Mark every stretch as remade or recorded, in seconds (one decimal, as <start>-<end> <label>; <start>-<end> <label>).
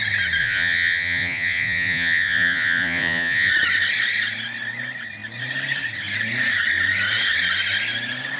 0.0-0.4 recorded; 0.4-3.5 remade; 3.5-8.4 recorded